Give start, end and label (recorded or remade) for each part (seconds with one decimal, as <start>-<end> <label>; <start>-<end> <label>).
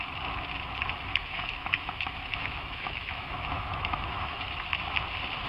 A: 0.0-1.1 recorded; 1.1-4.4 remade; 4.4-5.5 recorded